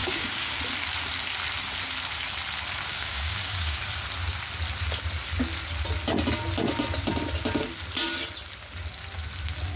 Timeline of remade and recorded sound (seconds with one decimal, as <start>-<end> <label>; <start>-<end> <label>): 0.0-0.6 remade; 0.6-2.9 recorded; 2.9-3.8 remade; 3.8-9.8 recorded